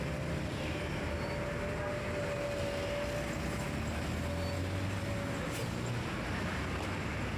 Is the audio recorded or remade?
recorded